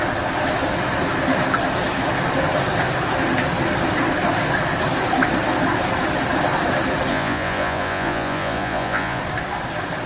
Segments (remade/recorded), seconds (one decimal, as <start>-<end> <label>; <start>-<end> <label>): 0.0-7.1 recorded; 7.1-9.2 remade; 9.2-10.1 recorded

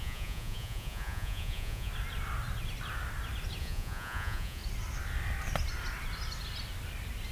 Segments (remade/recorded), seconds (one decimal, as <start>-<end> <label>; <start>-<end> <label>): 0.0-1.9 remade; 1.9-3.6 recorded; 3.6-4.6 remade; 4.6-7.3 recorded

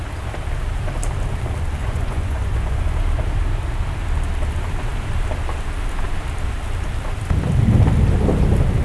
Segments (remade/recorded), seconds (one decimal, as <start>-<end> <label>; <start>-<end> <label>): 0.0-1.8 recorded; 1.8-2.8 remade; 2.8-8.8 recorded

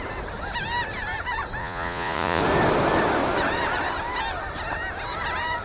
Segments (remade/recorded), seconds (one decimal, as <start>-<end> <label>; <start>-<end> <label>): 0.0-1.6 recorded; 1.6-2.4 remade; 2.4-5.6 recorded

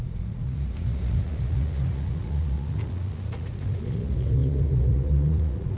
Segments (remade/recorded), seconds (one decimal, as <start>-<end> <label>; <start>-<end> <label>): 0.0-5.8 remade

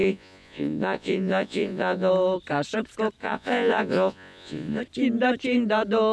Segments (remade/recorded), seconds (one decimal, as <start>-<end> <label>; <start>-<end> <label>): 0.0-2.1 remade; 2.1-3.2 recorded; 3.2-4.8 remade; 4.8-6.1 recorded

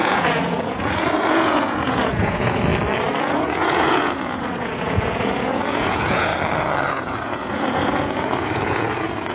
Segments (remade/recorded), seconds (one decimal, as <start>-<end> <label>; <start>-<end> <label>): 0.0-2.7 remade; 2.7-3.2 recorded; 3.2-6.3 remade; 6.3-6.9 recorded; 6.9-9.3 remade

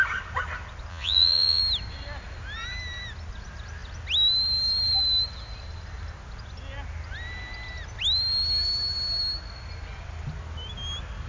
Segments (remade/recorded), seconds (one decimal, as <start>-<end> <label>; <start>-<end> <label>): 0.0-0.9 recorded; 0.9-1.6 remade; 1.6-11.3 recorded